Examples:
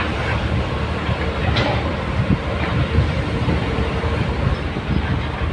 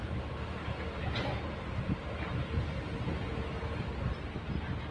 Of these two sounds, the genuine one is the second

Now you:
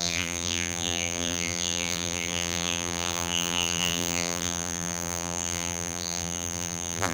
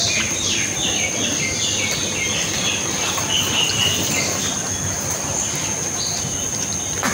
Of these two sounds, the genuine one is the second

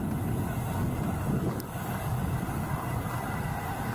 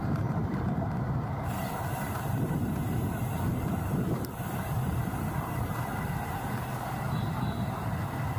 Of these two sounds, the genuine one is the first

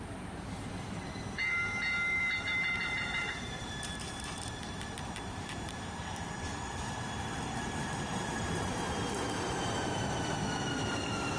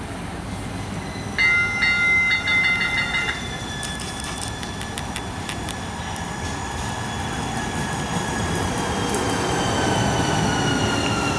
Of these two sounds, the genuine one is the second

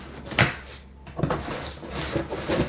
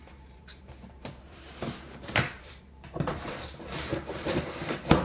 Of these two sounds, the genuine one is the first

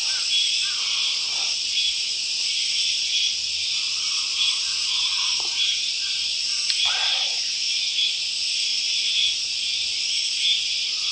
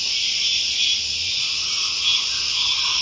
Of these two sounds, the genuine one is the second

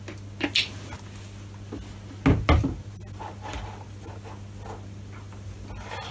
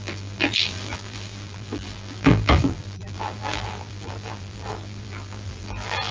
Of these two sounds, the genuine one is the first